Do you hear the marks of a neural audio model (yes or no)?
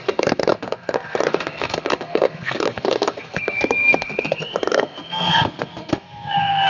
yes